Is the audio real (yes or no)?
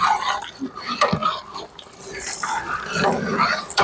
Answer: yes